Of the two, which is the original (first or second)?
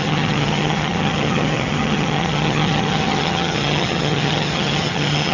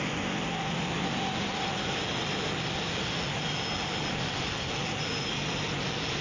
second